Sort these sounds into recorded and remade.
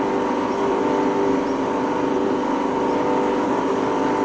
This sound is recorded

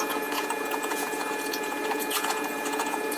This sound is remade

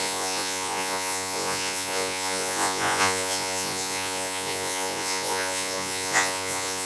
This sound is remade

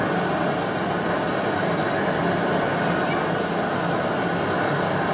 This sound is recorded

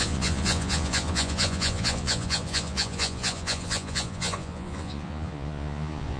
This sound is remade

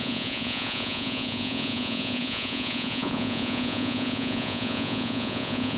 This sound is remade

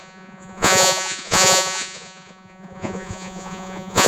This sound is remade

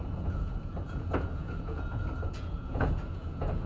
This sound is remade